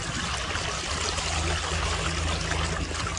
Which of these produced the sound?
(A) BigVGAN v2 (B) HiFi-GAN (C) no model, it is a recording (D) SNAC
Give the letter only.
C